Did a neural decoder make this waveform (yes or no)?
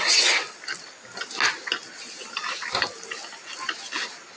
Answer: no